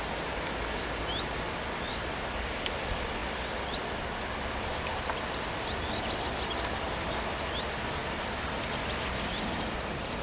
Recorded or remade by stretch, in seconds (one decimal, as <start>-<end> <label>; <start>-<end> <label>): 0.0-10.2 recorded